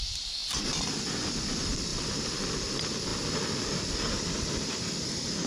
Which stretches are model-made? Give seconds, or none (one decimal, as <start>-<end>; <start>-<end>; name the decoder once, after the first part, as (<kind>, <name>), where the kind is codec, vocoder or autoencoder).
1.9-2.4 (vocoder, BigVGAN v2)